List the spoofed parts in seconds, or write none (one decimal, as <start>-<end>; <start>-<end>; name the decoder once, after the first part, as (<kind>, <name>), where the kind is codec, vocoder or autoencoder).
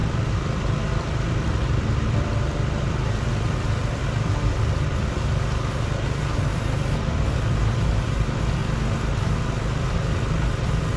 0.0-8.6 (vocoder, BigVGAN v2); 9.1-11.0